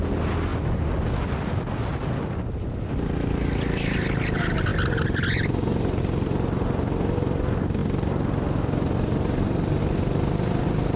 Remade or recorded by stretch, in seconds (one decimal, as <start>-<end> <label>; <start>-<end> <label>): 0.0-11.0 recorded